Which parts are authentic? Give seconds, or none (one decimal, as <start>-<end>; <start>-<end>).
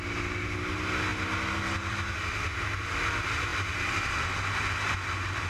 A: 0.0-5.5